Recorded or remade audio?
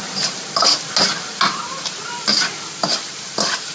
recorded